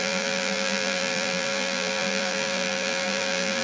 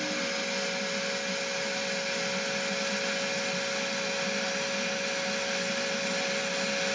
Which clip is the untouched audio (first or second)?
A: second